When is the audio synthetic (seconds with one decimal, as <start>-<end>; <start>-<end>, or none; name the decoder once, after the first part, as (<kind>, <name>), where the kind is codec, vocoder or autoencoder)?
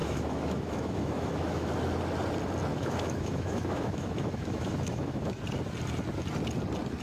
0.0-1.7 (autoencoder, DAC-VAE); 2.7-5.4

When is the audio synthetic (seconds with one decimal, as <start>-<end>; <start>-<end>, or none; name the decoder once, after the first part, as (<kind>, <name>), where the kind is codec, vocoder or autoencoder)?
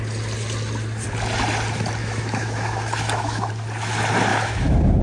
2.0-3.5 (autoencoder, DAC-VAE); 4.3-5.0